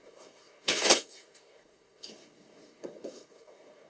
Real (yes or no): no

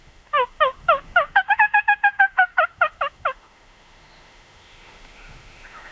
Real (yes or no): no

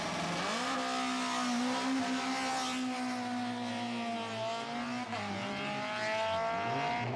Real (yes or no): yes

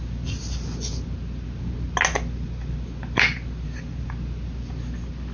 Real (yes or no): yes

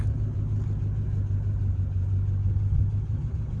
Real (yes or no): yes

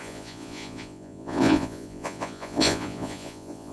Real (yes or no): no